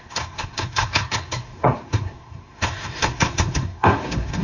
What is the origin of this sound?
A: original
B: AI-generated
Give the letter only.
B